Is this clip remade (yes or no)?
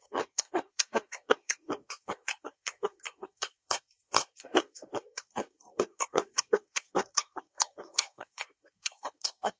yes